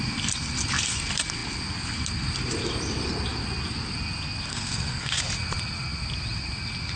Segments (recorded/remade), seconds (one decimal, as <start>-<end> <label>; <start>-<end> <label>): 0.0-4.5 recorded; 4.5-5.2 remade; 5.2-7.0 recorded